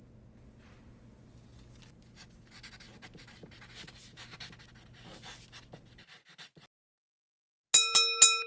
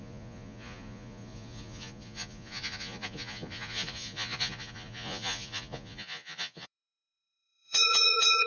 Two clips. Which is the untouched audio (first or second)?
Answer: first